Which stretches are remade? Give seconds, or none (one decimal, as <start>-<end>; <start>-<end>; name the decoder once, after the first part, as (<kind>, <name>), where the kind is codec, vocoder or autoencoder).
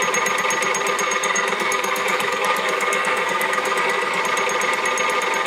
1.0-4.2 (codec, SNAC)